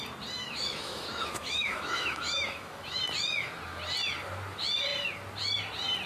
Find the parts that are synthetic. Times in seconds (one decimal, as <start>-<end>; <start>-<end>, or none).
0.4-3.0